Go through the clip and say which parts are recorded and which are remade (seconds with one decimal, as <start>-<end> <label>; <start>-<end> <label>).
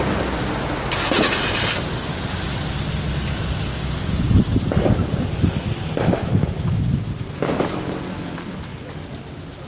0.0-9.7 recorded